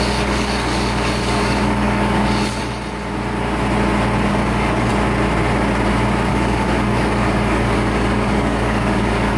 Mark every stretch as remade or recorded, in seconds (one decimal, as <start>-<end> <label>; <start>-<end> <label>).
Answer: 0.0-2.6 remade; 2.6-4.3 recorded; 4.3-4.9 remade; 4.9-6.3 recorded; 6.3-9.4 remade